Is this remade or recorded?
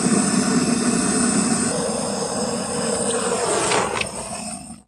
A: recorded